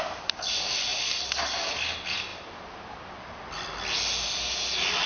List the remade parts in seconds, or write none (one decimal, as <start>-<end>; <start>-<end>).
0.9-1.6; 2.3-2.9